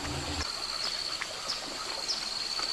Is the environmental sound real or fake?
real